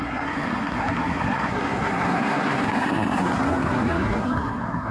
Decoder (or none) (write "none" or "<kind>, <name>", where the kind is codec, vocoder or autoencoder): codec, SNAC